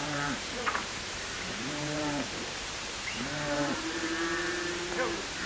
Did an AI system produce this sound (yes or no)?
yes